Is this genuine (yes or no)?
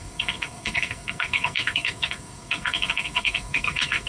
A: no